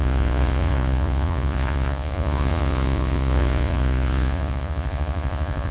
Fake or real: fake